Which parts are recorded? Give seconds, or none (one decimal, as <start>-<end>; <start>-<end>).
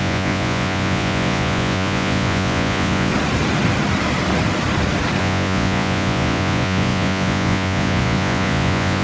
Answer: 3.1-5.2